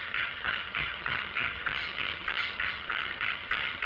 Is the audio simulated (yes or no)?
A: yes